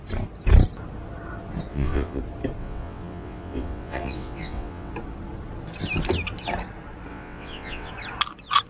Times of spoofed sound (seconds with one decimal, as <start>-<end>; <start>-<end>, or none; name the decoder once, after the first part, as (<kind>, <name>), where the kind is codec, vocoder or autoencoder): 1.7-2.2 (vocoder, WaveNeXt); 2.6-4.9; 7.1-7.9